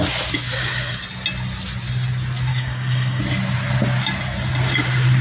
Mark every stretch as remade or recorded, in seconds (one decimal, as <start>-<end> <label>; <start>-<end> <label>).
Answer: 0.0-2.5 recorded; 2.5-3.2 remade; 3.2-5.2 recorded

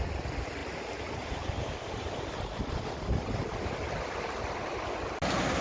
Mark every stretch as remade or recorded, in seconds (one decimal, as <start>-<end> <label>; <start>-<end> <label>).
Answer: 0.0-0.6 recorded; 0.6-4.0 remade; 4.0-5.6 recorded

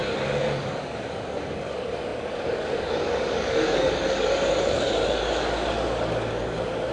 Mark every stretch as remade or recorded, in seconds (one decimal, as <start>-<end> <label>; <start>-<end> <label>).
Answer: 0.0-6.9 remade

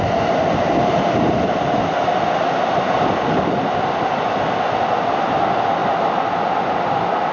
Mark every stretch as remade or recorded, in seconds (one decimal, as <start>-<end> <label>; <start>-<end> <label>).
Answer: 0.0-7.3 recorded

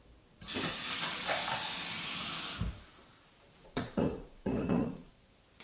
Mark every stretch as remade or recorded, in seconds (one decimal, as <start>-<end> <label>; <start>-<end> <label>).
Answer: 0.0-3.6 recorded; 3.6-5.1 remade; 5.1-5.6 recorded

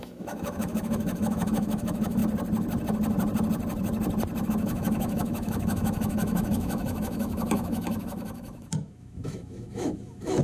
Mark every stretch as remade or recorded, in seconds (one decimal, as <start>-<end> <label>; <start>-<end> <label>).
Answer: 0.0-2.2 remade; 2.2-4.5 recorded; 4.5-10.4 remade

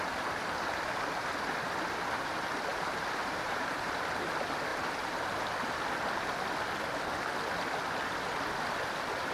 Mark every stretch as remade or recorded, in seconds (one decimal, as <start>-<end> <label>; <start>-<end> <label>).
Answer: 0.0-2.7 recorded; 2.7-4.0 remade; 4.0-4.7 recorded; 4.7-5.2 remade; 5.2-9.3 recorded